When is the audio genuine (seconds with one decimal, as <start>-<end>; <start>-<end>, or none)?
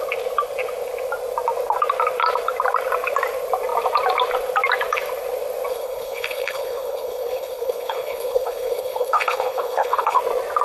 0.0-5.7; 10.2-10.6